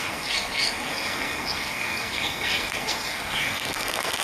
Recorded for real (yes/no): no